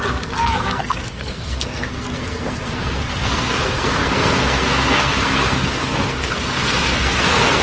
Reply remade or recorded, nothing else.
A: remade